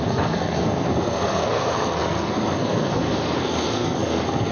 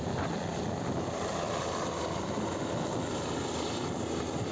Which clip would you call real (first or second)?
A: second